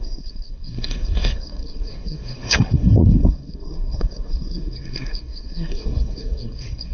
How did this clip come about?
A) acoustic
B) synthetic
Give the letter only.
B